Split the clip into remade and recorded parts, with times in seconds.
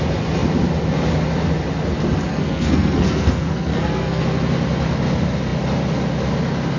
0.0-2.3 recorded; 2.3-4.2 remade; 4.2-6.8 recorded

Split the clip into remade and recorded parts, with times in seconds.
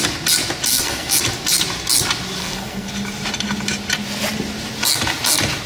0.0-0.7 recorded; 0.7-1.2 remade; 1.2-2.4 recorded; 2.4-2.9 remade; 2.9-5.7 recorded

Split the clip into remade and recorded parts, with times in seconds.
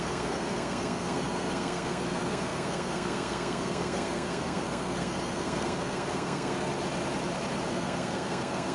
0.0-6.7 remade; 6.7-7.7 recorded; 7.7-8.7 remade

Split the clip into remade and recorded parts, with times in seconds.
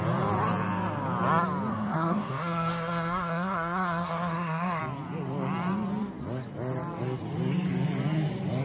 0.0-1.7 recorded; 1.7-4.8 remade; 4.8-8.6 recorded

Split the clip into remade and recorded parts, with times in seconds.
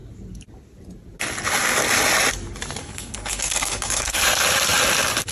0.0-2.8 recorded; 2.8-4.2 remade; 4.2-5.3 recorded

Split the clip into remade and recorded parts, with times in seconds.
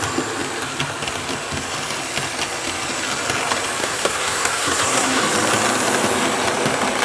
0.0-3.8 recorded; 3.8-5.2 remade; 5.2-7.0 recorded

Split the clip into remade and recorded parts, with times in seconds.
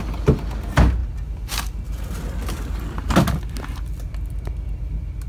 0.0-5.3 recorded